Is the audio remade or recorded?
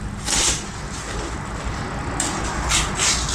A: recorded